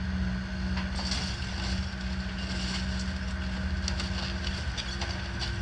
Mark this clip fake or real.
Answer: real